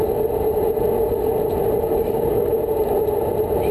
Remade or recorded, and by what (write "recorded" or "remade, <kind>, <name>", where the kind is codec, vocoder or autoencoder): recorded